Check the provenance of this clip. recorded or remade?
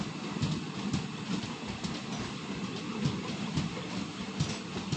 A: recorded